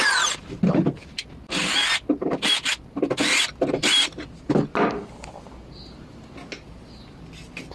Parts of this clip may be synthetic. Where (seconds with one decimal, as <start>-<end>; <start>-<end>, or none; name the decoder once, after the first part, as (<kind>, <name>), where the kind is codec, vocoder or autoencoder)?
none